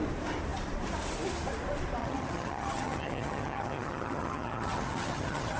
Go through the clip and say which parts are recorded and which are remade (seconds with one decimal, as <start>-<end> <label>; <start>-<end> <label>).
0.0-2.0 recorded; 2.0-5.6 remade